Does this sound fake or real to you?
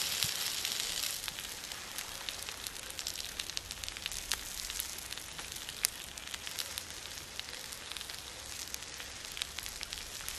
real